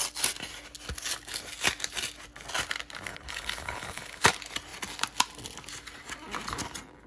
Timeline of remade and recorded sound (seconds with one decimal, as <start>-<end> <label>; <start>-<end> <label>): 0.0-3.1 recorded; 3.1-4.2 remade; 4.2-7.1 recorded